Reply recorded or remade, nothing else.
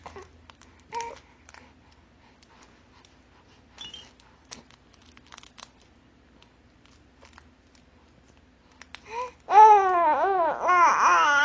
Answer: recorded